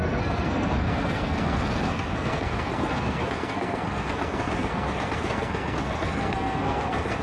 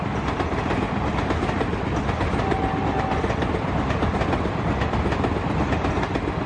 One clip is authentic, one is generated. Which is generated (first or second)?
first